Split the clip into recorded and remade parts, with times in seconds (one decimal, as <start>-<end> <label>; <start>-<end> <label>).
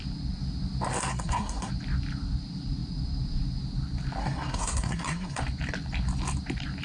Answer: 0.0-1.1 recorded; 1.1-1.7 remade; 1.7-4.2 recorded; 4.2-5.4 remade; 5.4-6.8 recorded